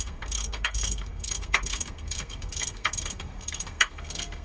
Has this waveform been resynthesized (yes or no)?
yes